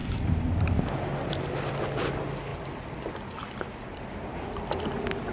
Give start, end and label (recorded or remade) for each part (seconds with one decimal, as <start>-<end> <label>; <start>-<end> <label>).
0.0-1.3 recorded; 1.3-2.5 remade; 2.5-4.1 recorded; 4.1-5.3 remade